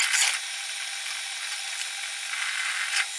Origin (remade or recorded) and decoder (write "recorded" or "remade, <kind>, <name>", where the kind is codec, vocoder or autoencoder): recorded